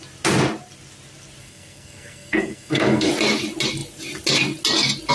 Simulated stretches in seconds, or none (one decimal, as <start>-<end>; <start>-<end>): 1.4-3.1